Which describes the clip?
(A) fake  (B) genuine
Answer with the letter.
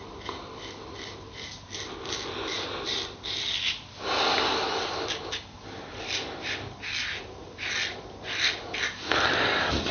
B